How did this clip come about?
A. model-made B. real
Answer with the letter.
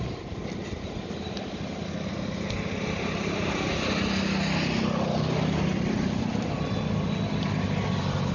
B